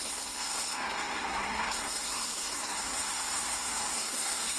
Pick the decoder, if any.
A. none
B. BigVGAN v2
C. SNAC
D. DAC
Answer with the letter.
C